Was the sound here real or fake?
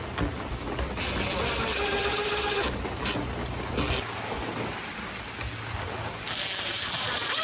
real